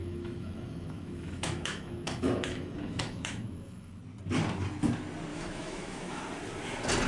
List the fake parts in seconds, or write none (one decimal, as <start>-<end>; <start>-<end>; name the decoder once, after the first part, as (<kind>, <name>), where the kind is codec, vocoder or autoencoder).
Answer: 0.0-4.0 (autoencoder, DAC-VAE); 5.3-6.2